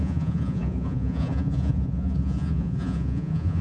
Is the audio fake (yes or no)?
yes